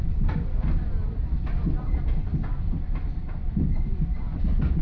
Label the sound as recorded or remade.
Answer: recorded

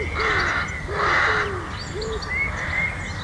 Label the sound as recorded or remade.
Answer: recorded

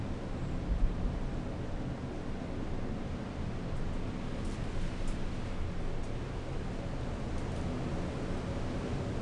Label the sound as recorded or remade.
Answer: recorded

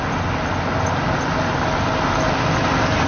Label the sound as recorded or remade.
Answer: recorded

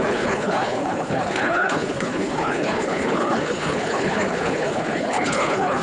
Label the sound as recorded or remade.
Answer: remade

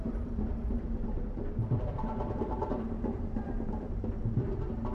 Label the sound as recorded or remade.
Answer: remade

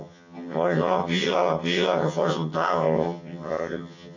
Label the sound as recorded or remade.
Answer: remade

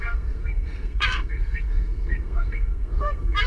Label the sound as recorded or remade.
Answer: remade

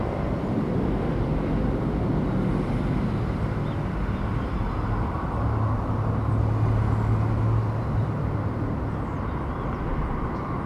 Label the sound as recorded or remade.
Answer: recorded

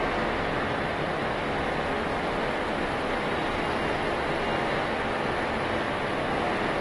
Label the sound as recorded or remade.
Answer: recorded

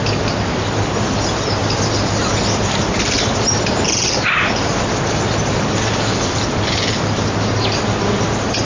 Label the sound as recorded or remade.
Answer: recorded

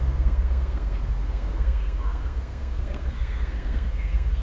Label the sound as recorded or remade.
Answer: remade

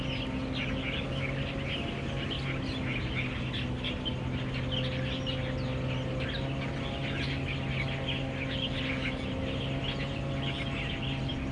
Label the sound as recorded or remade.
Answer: recorded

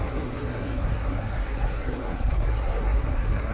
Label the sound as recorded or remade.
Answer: remade